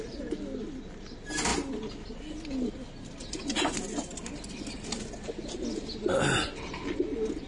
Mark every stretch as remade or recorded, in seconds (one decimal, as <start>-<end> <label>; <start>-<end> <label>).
0.0-7.5 recorded